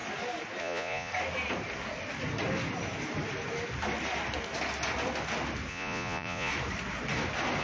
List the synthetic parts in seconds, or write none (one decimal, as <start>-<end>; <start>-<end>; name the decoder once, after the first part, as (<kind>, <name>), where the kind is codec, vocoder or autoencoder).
0.6-1.1 (vocoder, Vocos); 5.7-6.5